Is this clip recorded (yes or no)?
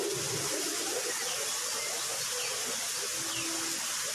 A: yes